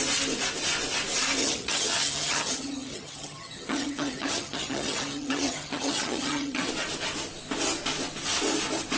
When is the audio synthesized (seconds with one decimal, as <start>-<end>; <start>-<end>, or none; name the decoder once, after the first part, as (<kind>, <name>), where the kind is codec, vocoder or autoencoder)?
1.4-6.7 (vocoder, HiFi-GAN)